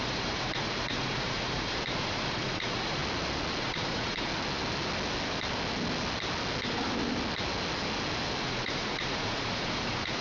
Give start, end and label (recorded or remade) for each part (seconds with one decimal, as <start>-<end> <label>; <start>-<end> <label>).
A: 0.0-3.0 remade; 3.0-3.6 recorded; 3.6-4.3 remade; 4.3-8.4 recorded; 8.4-10.2 remade

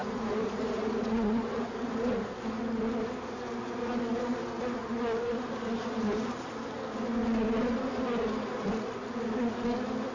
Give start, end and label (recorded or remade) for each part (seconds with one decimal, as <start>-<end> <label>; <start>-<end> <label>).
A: 0.0-2.1 remade; 2.1-10.1 recorded

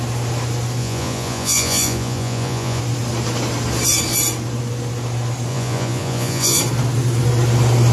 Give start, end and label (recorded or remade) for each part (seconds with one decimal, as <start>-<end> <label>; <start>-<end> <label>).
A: 0.0-0.8 recorded; 0.8-2.8 remade; 2.8-5.5 recorded; 5.5-6.6 remade; 6.6-7.9 recorded

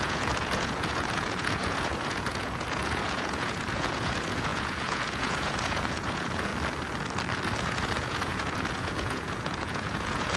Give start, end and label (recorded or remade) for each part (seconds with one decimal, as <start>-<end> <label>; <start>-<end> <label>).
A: 0.0-6.5 remade; 6.5-7.6 recorded; 7.6-10.4 remade